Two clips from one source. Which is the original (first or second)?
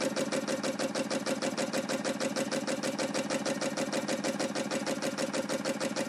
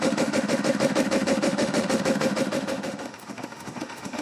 first